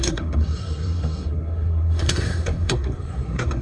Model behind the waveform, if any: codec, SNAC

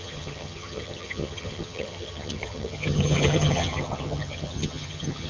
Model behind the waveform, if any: vocoder, HiFi-GAN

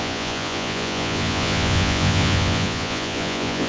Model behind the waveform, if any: vocoder, Vocos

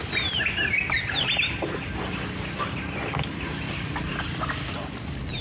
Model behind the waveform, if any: none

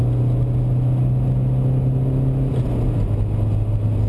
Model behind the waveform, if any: none